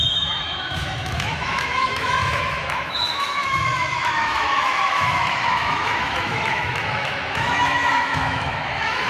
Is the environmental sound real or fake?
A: fake